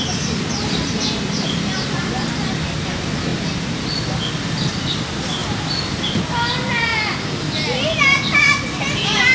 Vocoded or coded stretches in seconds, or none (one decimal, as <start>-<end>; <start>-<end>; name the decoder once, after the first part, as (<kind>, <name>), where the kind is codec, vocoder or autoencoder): 5.4-6.2 (vocoder, BigVGAN v2)